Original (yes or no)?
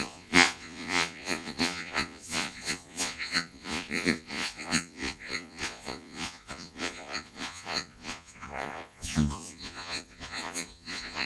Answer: no